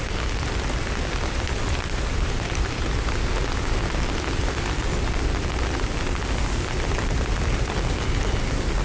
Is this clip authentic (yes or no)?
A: yes